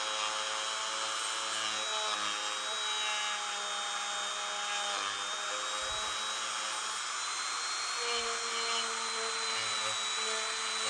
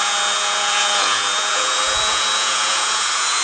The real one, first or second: first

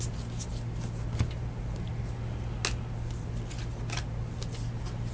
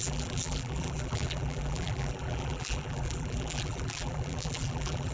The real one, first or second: first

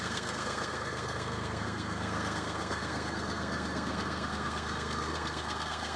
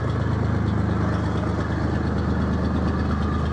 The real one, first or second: second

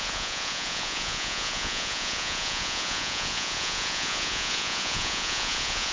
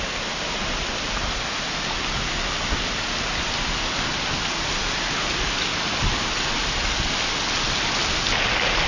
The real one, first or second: second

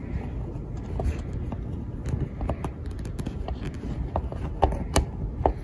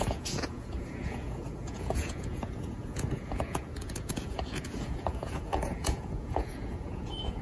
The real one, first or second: first